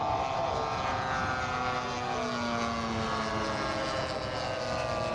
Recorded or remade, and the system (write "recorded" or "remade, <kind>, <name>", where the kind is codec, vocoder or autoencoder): recorded